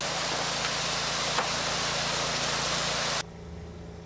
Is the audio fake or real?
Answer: real